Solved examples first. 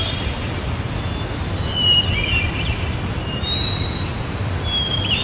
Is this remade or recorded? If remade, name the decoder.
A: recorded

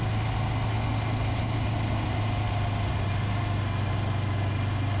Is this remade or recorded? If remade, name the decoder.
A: recorded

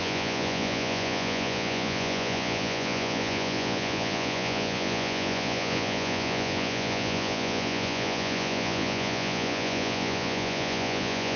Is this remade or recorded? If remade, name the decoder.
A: remade, vocoder, Vocos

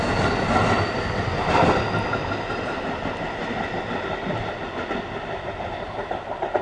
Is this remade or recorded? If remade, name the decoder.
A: recorded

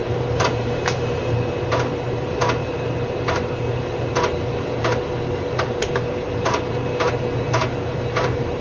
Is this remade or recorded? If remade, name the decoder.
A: remade, vocoder, BigVGAN v2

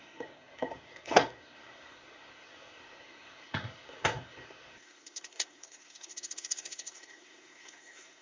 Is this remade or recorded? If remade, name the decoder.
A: remade, codec, SNAC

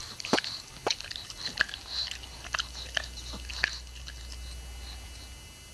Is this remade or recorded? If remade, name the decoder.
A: recorded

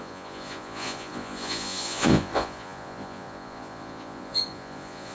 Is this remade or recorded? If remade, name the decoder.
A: remade, vocoder, Vocos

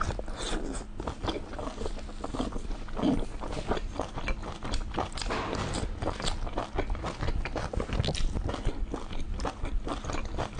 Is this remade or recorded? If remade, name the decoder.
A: recorded